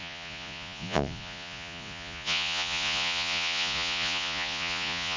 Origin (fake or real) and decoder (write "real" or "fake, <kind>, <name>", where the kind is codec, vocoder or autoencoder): fake, vocoder, Vocos